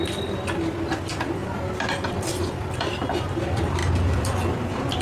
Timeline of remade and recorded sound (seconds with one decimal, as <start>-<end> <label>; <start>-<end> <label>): 0.0-1.4 recorded; 1.4-3.4 remade; 3.4-5.0 recorded